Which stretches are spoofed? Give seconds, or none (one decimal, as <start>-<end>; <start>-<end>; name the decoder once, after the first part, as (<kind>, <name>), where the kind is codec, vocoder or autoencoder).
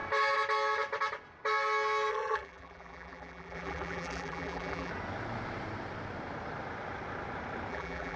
2.1-4.9 (vocoder, BigVGAN v2); 7.7-8.2